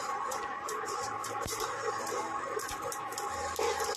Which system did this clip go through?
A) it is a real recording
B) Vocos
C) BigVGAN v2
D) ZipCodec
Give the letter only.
A